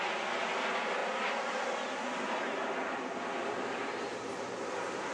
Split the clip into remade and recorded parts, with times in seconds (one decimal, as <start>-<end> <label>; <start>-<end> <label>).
0.0-5.1 recorded